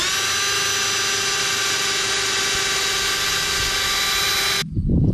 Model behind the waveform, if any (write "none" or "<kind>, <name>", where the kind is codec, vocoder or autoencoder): none